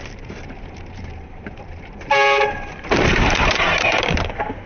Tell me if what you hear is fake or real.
fake